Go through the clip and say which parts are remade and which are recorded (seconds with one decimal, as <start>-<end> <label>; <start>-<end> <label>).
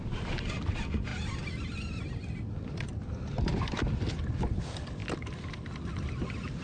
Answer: 0.0-6.6 recorded